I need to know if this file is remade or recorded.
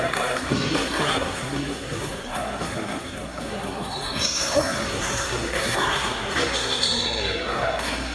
remade